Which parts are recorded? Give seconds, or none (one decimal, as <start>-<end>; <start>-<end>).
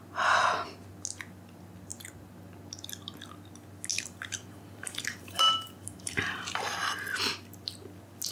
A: 0.0-3.9; 6.6-8.3